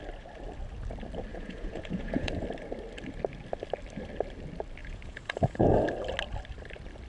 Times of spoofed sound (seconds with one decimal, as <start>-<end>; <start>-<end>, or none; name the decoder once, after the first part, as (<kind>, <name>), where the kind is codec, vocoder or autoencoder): 1.3-2.3 (vocoder, Vocos); 4.8-5.7